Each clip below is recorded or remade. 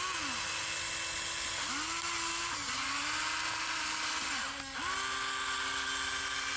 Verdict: recorded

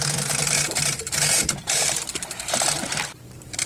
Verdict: remade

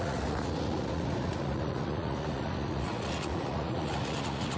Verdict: remade